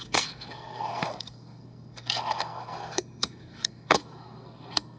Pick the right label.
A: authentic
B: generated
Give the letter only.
B